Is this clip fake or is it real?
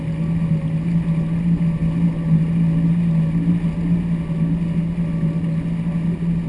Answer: real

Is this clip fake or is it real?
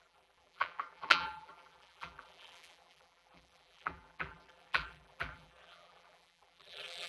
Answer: fake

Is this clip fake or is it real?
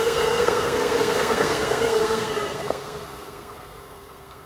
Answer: fake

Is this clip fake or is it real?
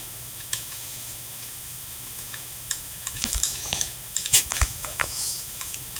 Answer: fake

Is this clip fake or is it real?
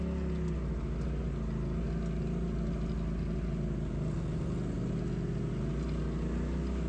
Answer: real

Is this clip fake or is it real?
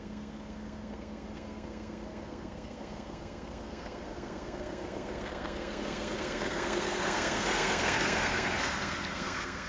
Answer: fake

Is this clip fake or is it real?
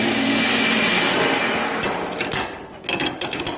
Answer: real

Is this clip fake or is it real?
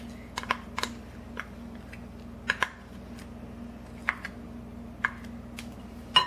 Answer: real